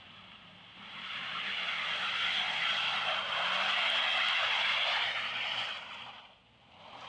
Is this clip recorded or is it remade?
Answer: recorded